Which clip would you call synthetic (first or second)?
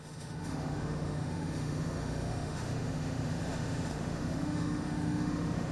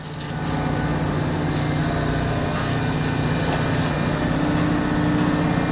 first